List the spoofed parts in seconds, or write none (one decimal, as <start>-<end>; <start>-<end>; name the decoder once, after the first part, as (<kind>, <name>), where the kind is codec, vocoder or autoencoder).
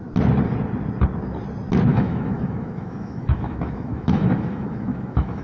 1.9-5.4 (autoencoder, DAC-VAE)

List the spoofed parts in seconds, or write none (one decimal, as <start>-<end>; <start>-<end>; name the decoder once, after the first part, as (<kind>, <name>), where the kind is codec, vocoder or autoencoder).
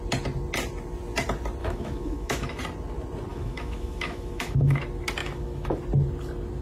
1.6-2.6 (autoencoder, DAC-VAE); 3.3-4.8; 5.2-5.8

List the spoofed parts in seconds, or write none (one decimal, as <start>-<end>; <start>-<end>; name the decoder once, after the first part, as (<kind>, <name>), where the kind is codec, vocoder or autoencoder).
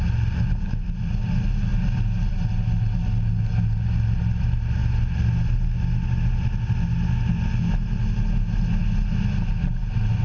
none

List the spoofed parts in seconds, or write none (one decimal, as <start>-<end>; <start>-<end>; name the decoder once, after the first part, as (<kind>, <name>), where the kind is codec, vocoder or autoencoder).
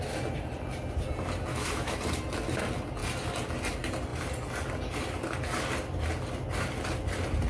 1.5-2.0 (autoencoder, DAC-VAE)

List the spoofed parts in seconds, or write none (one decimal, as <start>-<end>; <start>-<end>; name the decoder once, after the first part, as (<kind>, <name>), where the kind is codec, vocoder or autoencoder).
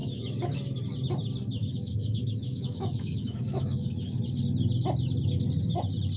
0.0-0.8 (autoencoder, DAC-VAE); 1.6-4.2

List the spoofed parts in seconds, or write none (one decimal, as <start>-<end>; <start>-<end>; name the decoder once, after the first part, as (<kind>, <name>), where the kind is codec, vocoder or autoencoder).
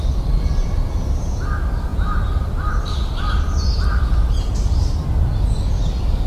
none